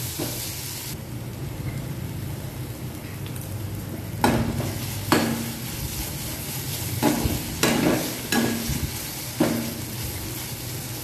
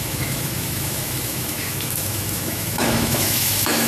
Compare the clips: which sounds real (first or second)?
first